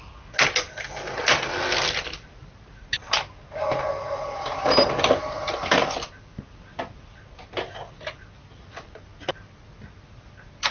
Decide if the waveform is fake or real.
real